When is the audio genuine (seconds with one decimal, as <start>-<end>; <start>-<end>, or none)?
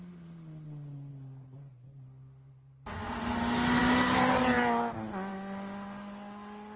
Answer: 0.0-6.8